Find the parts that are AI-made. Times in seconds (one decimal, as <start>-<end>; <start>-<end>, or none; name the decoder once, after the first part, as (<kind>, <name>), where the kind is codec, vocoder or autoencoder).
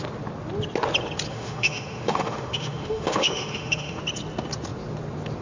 1.3-4.0 (autoencoder, DAC-VAE)